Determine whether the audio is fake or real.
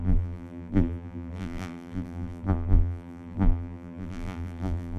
fake